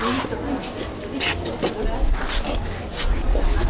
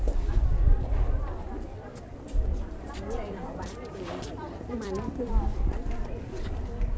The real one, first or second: first